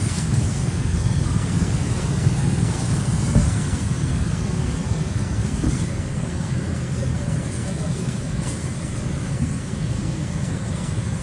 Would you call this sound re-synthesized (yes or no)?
yes